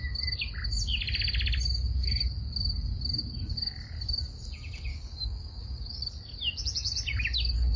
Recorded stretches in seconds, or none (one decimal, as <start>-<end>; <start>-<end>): 0.0-4.9; 6.1-7.8

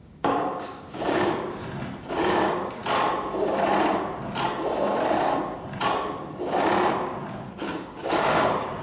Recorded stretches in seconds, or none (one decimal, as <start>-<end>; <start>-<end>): 1.6-2.1; 2.8-7.6

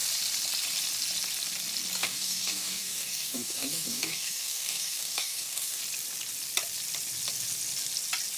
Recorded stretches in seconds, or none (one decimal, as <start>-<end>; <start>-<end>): 0.0-2.0; 5.8-8.4

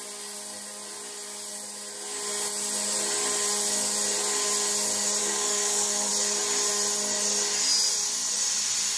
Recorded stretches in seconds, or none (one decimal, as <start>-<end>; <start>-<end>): 0.0-5.2; 6.1-9.0

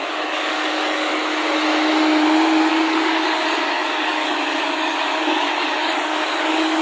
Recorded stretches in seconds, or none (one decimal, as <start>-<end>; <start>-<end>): 1.1-2.7

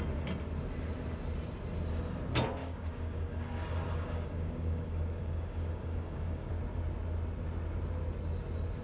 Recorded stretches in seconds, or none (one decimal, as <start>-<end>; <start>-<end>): 0.0-2.6; 6.5-8.8

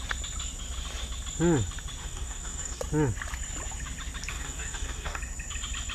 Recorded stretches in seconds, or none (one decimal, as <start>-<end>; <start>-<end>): 0.0-2.0; 2.8-4.3; 5.2-5.9